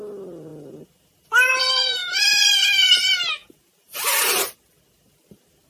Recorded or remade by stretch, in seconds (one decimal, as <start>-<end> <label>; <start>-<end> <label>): 0.0-5.7 recorded